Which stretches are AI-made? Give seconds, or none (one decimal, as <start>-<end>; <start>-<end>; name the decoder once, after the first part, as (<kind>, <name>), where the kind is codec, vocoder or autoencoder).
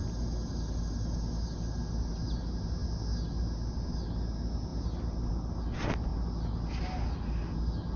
none